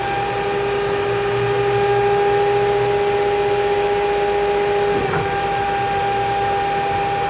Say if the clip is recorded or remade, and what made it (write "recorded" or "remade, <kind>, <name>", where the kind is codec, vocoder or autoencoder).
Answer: recorded